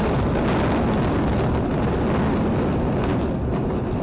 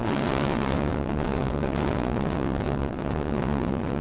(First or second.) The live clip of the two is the first